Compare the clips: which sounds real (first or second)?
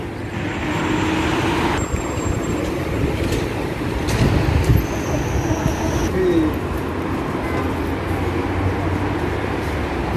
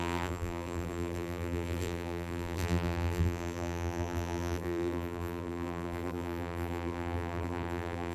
first